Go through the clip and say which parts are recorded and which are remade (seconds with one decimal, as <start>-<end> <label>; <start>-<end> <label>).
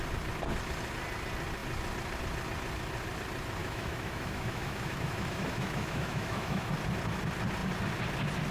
0.0-3.6 recorded; 3.6-6.7 remade; 6.7-8.5 recorded